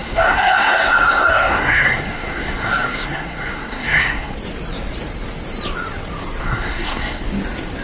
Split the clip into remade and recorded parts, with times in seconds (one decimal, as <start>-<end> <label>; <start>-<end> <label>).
0.0-4.3 remade; 4.3-6.4 recorded; 6.4-7.2 remade; 7.2-7.8 recorded